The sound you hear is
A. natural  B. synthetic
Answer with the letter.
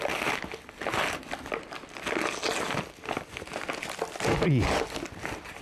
A